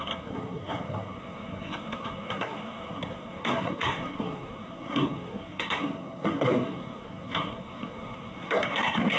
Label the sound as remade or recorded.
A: remade